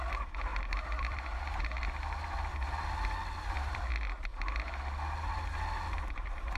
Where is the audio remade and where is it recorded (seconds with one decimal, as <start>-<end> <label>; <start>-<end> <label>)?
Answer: 0.0-0.5 recorded; 0.5-1.6 remade; 1.6-2.5 recorded; 2.5-3.9 remade; 3.9-6.6 recorded